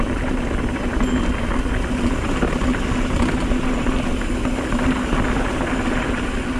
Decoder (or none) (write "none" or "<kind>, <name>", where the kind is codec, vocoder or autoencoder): none